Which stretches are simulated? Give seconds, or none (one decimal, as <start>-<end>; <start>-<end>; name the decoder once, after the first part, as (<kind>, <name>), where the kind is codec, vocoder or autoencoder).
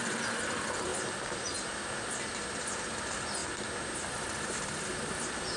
none